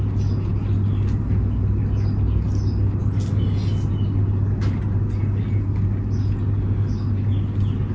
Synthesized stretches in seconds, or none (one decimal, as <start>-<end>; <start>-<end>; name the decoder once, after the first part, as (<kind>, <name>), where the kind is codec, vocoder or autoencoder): none